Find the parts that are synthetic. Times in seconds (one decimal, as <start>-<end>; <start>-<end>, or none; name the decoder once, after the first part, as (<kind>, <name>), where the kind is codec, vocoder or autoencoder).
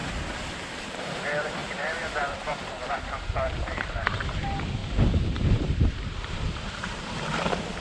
0.8-7.8 (vocoder, BigVGAN v2)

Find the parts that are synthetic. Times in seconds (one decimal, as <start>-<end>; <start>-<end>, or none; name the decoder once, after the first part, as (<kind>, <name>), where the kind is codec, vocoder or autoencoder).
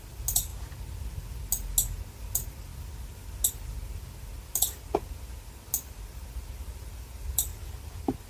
none